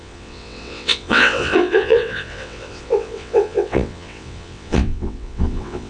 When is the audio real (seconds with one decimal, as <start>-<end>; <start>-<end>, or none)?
none

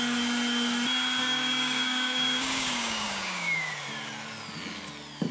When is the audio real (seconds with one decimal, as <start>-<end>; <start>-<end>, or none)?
0.0-1.2; 3.7-5.3

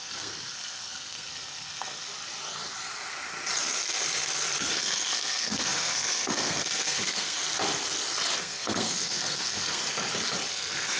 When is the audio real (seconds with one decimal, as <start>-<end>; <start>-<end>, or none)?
2.1-4.6; 7.4-8.4; 9.8-10.5

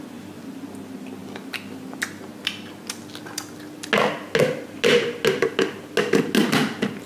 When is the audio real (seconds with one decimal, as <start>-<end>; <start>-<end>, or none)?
0.0-7.1

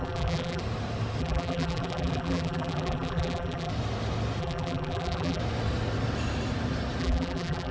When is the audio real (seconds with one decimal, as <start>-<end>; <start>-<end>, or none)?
0.6-1.2; 3.7-4.4; 5.4-7.0

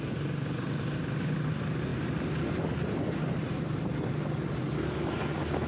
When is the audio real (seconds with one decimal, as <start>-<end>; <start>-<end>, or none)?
0.0-5.7